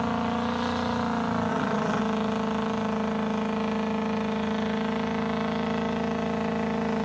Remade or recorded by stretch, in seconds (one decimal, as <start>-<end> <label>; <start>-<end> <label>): 0.0-1.5 recorded; 1.5-2.0 remade; 2.0-7.0 recorded